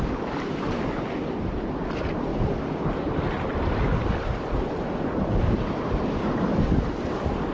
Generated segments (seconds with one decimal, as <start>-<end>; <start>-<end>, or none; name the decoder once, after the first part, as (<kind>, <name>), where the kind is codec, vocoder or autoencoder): none